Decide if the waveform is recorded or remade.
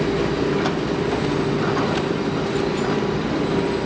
remade